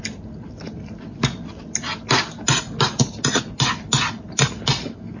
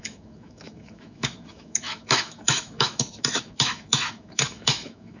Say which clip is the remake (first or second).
second